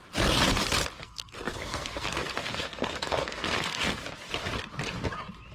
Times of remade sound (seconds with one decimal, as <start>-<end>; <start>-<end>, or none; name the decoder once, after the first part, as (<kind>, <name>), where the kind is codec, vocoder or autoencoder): 1.0-4.0 (codec, SNAC)